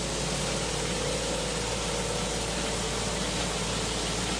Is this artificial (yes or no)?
no